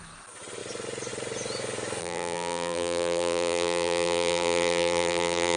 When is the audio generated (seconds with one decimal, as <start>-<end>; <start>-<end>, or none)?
2.0-5.6